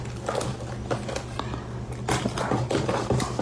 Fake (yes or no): no